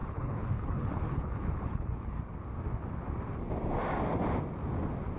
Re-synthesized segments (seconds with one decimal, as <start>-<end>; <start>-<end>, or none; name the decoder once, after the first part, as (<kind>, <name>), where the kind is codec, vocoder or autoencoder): 0.0-2.2 (codec, HILCodec)